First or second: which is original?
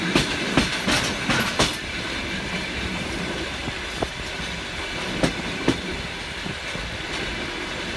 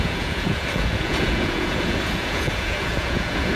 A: first